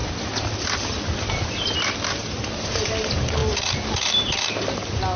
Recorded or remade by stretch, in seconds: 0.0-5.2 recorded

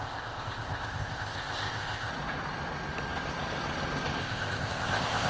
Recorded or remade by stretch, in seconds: 0.0-2.1 remade; 2.1-4.2 recorded; 4.2-5.3 remade

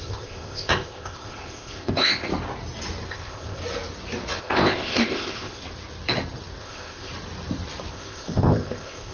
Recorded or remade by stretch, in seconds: 0.0-2.3 remade; 2.3-3.1 recorded; 3.1-3.6 remade; 3.6-4.4 recorded; 4.4-5.6 remade; 5.6-6.6 recorded; 6.6-7.1 remade; 7.1-7.9 recorded; 7.9-9.1 remade